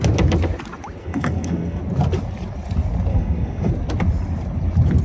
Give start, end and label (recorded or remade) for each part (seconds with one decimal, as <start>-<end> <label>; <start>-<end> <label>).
0.0-1.0 recorded; 1.0-1.8 remade; 1.8-3.1 recorded; 3.1-3.7 remade; 3.7-5.0 recorded